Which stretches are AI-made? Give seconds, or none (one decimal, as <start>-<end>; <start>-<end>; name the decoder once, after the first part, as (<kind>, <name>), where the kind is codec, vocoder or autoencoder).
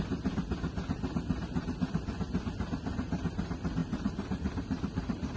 3.8-5.4 (vocoder, BigVGAN v2)